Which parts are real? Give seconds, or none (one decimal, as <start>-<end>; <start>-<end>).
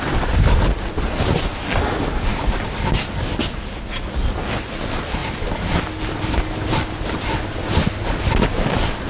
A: 0.0-2.3; 3.0-9.1